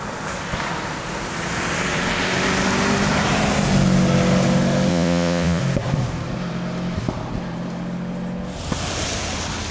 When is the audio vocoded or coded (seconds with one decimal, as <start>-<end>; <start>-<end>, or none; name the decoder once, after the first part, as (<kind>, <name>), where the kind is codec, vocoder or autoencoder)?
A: 4.9-5.6 (vocoder, Vocos)